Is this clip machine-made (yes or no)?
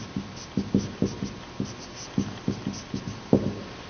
no